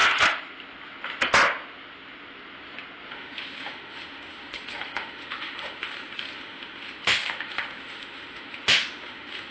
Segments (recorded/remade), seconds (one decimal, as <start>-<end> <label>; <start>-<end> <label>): 0.0-3.1 recorded; 3.1-9.5 remade